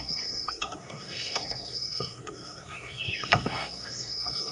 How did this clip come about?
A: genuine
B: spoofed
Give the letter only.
B